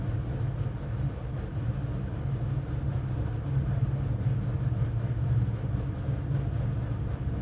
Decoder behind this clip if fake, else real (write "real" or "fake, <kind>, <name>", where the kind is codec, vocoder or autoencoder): real